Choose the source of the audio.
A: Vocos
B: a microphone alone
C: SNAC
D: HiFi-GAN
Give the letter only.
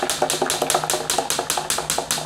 B